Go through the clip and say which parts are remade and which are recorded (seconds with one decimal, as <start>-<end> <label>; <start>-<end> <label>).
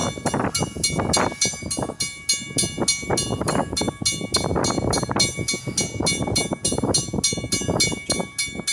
0.0-8.7 recorded